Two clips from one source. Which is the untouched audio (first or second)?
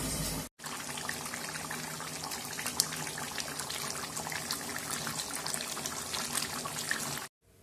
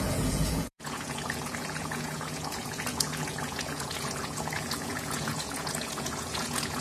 first